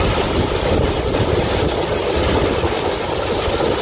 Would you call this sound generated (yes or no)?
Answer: no